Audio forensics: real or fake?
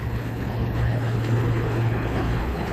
fake